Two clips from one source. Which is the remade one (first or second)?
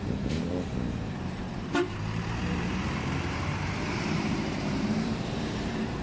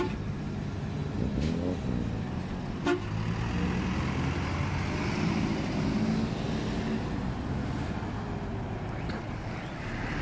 first